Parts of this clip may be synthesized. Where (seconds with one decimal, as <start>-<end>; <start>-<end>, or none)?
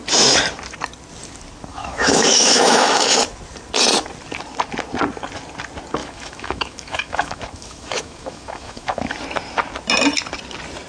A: 1.7-3.2; 6.0-9.1